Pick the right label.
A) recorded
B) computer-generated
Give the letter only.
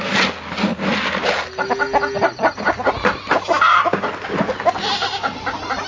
A